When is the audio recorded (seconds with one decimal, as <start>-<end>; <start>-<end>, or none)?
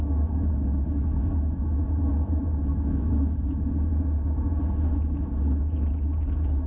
0.5-2.7; 3.7-6.7